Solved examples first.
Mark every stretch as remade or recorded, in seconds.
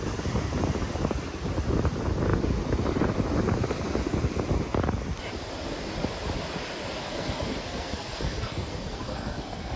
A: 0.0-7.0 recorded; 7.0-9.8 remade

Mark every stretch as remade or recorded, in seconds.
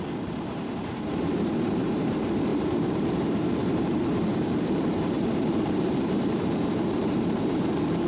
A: 0.0-8.1 remade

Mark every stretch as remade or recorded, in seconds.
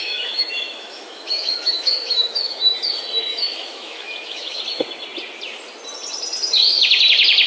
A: 0.0-2.6 remade; 2.6-3.3 recorded; 3.3-4.6 remade; 4.6-7.5 recorded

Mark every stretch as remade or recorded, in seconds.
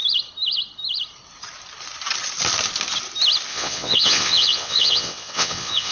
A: 0.0-3.5 recorded; 3.5-5.9 remade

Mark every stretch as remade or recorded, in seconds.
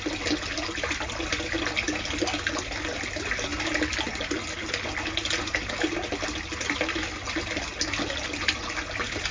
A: 0.0-9.3 recorded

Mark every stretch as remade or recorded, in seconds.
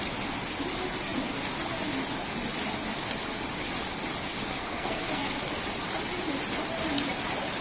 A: 0.0-4.5 recorded; 4.5-5.4 remade; 5.4-7.6 recorded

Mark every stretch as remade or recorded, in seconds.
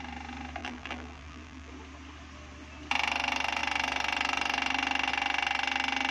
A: 0.0-0.6 recorded; 0.6-1.7 remade; 1.7-6.1 recorded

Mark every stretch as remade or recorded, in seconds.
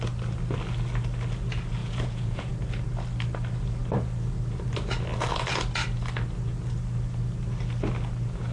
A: 0.0-1.8 recorded; 1.8-2.5 remade; 2.5-8.5 recorded